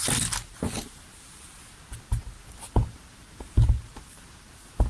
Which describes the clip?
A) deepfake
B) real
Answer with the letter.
B